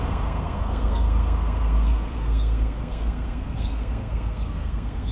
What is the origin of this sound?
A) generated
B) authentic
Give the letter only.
A